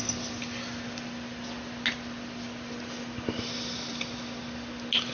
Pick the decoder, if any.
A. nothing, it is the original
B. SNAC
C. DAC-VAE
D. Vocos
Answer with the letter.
A